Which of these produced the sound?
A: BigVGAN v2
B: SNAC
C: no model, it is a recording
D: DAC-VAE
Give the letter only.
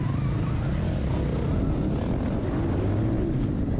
C